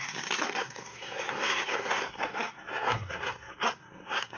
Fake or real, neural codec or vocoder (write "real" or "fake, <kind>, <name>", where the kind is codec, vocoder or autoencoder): fake, codec, SNAC